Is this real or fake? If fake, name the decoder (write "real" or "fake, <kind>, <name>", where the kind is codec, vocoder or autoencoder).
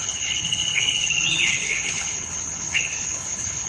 fake, codec, HILCodec